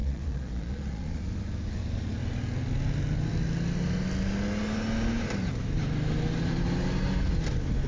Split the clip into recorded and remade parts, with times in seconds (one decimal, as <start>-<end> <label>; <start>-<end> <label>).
0.0-1.2 remade; 1.2-7.9 recorded